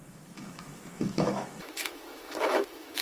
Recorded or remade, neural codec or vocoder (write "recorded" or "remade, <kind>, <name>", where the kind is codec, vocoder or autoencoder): remade, autoencoder, DAC-VAE